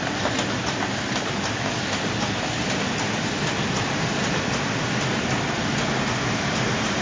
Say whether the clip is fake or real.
real